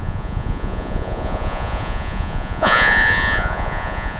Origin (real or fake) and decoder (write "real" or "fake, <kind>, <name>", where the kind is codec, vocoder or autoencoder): fake, vocoder, Vocos